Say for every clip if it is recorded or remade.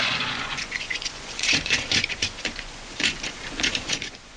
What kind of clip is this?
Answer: remade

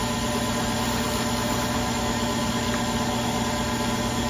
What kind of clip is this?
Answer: recorded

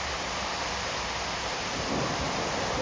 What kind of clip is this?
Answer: remade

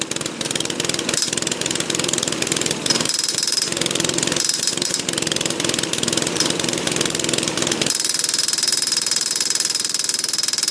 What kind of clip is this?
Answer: remade